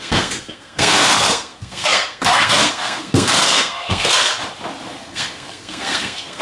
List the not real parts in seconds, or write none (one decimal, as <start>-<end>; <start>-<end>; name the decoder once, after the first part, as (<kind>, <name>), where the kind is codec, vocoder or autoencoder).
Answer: 0.0-4.3 (codec, SNAC); 4.9-6.4